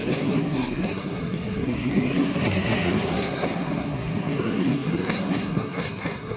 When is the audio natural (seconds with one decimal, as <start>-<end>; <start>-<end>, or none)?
none